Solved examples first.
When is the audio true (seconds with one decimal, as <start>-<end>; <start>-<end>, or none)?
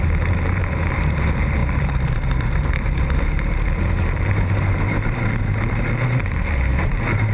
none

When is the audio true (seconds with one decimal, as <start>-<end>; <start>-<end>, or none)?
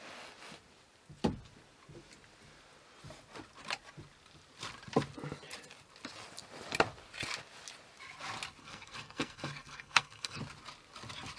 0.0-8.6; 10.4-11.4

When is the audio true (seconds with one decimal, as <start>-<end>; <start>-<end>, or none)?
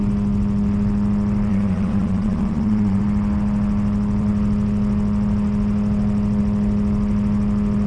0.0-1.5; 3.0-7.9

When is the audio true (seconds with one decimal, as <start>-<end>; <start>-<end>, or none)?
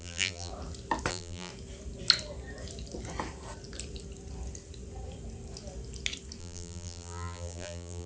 0.5-1.1; 1.5-6.4